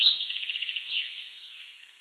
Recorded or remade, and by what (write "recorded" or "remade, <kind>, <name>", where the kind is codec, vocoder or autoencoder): remade, codec, SNAC